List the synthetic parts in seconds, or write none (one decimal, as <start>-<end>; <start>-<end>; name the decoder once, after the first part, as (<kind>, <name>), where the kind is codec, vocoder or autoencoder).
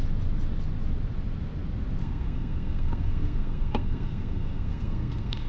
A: 2.0-5.5 (codec, SNAC)